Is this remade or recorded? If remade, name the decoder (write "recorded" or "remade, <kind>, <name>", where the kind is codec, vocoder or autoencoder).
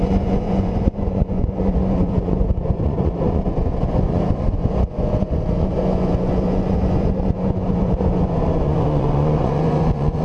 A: remade, vocoder, Vocos